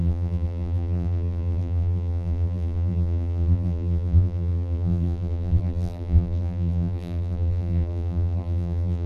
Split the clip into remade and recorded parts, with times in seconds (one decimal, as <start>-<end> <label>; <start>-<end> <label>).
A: 0.0-9.1 remade